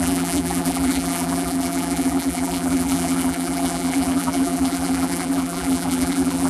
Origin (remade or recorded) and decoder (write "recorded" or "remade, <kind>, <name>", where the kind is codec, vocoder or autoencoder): remade, vocoder, BigVGAN v2